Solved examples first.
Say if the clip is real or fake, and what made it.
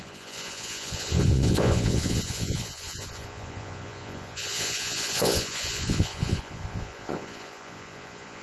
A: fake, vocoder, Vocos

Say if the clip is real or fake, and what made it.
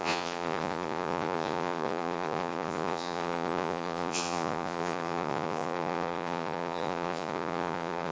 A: fake, vocoder, Vocos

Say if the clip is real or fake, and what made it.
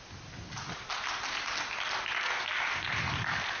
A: real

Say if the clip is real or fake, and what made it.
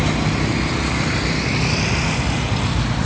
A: real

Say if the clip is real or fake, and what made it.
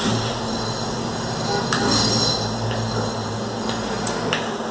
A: real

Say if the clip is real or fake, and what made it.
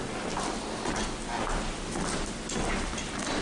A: real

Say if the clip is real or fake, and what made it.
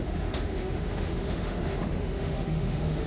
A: fake, autoencoder, DAC-VAE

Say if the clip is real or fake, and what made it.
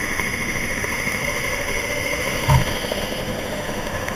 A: fake, autoencoder, DAC-VAE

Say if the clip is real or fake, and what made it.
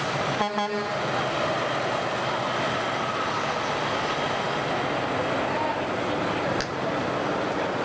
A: real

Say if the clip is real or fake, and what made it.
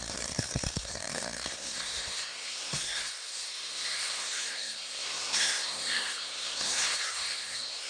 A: fake, codec, SNAC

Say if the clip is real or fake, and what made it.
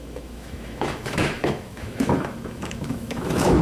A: fake, autoencoder, DAC-VAE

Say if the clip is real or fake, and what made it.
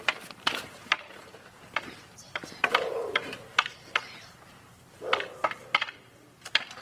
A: fake, vocoder, BigVGAN v2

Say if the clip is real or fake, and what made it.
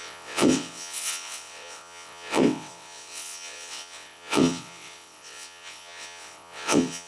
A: fake, vocoder, WaveNeXt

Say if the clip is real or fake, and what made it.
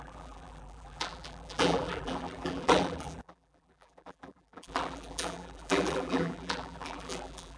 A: fake, vocoder, BigVGAN v2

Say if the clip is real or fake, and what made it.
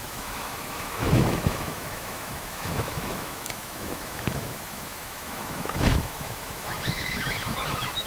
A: fake, autoencoder, DAC-VAE